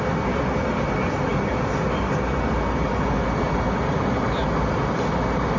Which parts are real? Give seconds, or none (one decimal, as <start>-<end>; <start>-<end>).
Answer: 0.0-5.6